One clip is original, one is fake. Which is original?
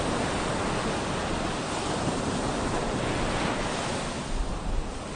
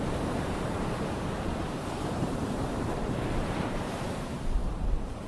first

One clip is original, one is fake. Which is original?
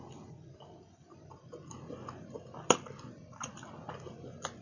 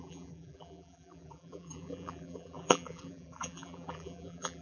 first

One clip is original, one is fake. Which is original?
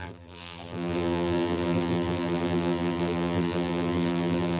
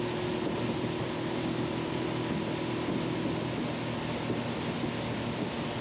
second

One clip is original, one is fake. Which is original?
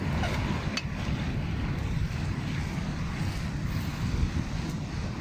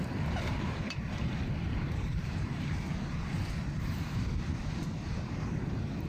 first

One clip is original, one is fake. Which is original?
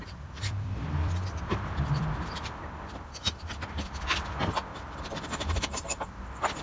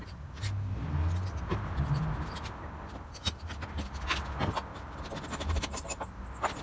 second